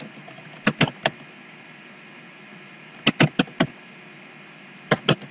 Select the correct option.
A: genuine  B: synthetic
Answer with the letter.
A